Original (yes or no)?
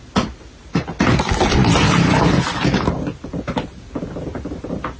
yes